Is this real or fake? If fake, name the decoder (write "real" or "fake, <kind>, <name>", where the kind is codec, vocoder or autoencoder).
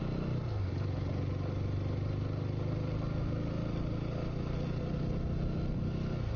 real